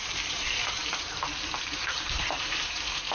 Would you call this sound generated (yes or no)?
yes